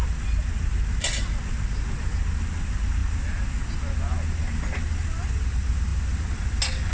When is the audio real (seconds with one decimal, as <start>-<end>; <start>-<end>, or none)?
0.0-6.9